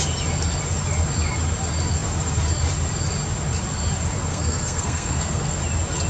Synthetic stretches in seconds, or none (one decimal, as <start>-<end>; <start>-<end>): 4.3-5.6